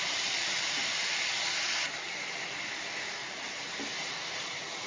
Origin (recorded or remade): remade